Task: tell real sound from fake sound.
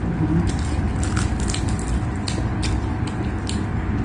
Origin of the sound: real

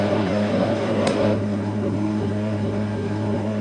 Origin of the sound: fake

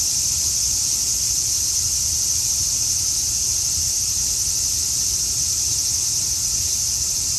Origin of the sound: fake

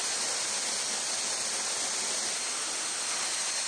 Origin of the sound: real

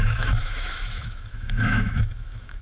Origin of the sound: fake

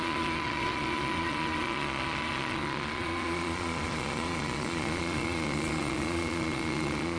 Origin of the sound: fake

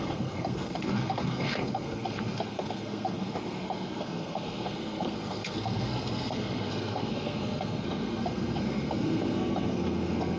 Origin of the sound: fake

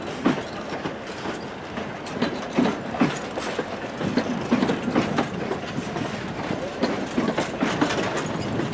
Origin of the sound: real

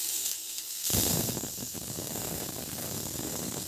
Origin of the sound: fake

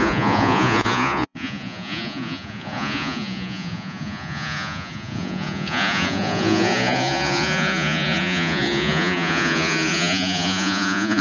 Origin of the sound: fake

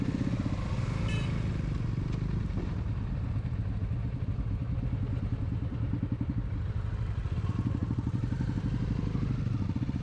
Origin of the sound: real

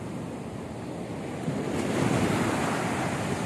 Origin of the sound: real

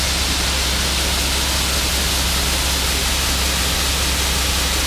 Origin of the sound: real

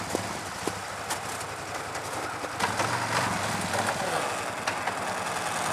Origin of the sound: real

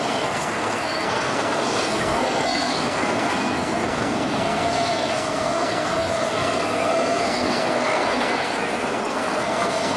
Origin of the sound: fake